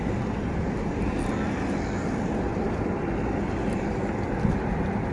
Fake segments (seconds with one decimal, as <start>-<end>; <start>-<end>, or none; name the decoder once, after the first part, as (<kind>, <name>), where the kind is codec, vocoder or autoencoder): none